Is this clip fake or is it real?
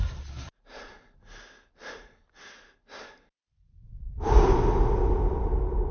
real